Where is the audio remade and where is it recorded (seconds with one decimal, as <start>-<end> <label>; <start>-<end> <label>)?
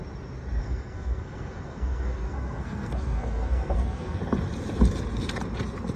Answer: 0.0-0.6 recorded; 0.6-4.2 remade; 4.2-6.0 recorded